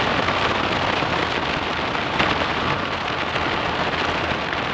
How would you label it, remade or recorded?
recorded